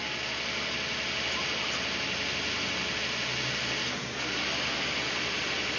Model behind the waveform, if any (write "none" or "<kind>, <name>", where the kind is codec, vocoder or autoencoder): none